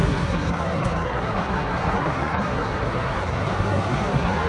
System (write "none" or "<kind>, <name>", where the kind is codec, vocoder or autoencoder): codec, SNAC